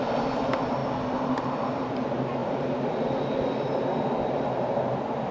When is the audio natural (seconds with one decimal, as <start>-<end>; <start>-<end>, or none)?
0.0-5.3